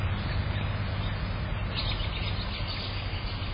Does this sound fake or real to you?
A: real